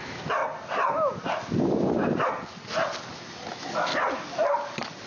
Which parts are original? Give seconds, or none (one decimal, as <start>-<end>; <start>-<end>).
0.4-3.5; 3.9-5.1